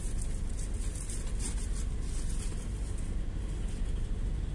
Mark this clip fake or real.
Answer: real